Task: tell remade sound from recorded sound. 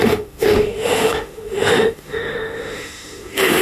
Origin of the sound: remade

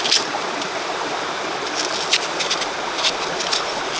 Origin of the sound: recorded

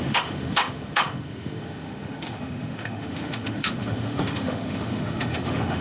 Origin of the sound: remade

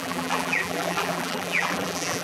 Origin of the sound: remade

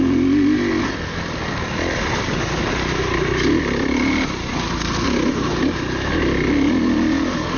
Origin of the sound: recorded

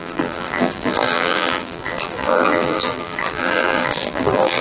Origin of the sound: remade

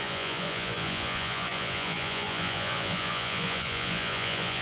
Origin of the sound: remade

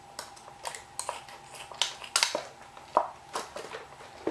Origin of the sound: recorded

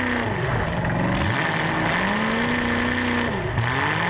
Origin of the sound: recorded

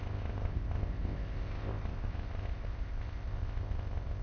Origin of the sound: remade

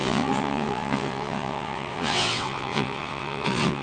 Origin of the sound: remade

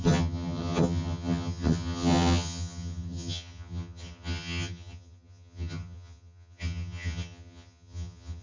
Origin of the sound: remade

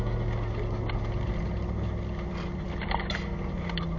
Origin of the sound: recorded